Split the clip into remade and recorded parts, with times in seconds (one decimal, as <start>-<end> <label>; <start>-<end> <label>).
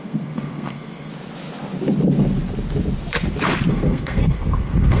0.0-1.1 remade; 1.1-3.7 recorded; 3.7-5.0 remade